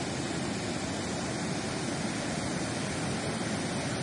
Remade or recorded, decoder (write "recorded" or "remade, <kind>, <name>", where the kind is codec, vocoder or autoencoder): recorded